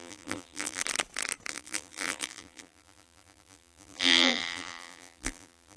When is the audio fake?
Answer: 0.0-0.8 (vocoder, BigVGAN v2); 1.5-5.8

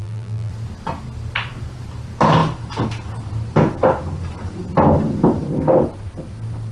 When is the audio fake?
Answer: 0.0-0.5 (vocoder, BigVGAN v2)

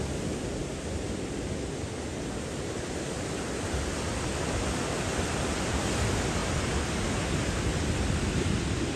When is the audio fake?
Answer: none

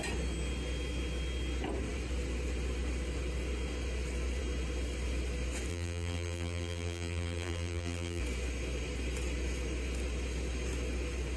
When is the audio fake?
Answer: 5.7-8.2 (vocoder, BigVGAN v2)

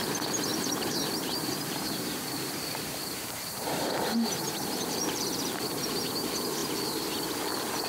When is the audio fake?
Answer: 0.5-5.2 (vocoder, BigVGAN v2)

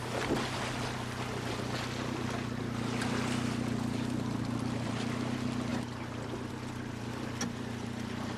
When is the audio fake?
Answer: none